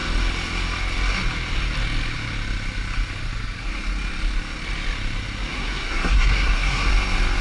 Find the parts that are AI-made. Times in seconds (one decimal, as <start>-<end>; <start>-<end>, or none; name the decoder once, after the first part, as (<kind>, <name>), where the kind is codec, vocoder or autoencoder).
5.5-6.9 (codec, SNAC)